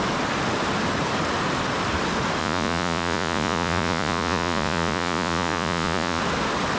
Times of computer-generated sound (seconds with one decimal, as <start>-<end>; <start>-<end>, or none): 2.4-6.2